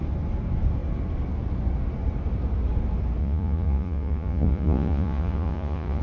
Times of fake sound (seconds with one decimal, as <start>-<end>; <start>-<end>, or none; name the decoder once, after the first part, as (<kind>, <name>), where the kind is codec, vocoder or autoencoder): 3.2-6.0 (vocoder, Vocos)